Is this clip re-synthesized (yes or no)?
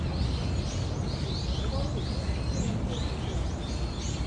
no